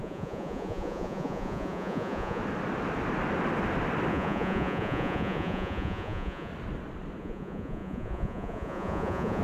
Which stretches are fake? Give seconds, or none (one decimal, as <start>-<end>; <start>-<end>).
0.0-2.4; 4.1-6.5; 7.2-9.4